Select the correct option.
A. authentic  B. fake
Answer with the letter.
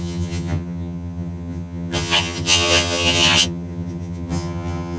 B